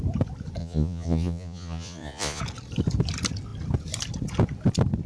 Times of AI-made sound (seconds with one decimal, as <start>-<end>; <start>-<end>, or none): 0.6-2.4